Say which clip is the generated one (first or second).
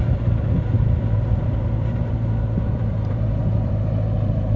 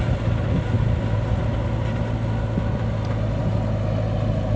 first